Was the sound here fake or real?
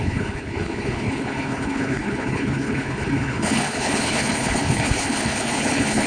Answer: fake